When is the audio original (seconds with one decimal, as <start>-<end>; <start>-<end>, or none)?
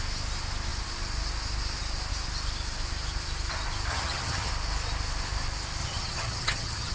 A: 0.0-3.9; 4.5-5.8